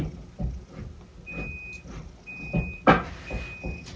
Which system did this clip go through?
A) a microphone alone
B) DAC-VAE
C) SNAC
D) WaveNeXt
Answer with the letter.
A